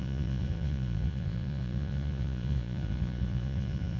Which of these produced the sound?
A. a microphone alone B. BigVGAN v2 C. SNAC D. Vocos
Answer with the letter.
D